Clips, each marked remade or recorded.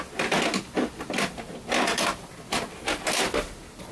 recorded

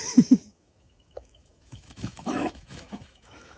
remade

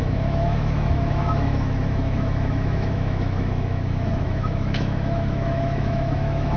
remade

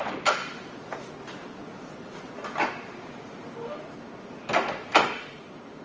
recorded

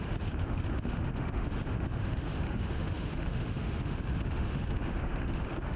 remade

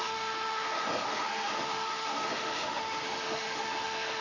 remade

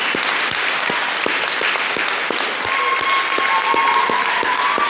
recorded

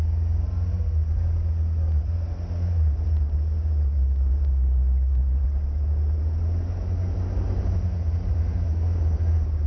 recorded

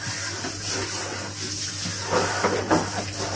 recorded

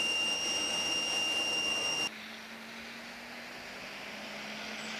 recorded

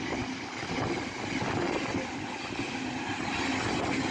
recorded